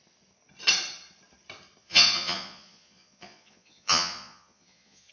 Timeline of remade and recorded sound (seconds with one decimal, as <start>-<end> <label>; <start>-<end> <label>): 0.0-1.8 recorded; 1.8-5.1 remade